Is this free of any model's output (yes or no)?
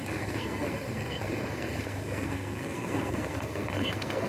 no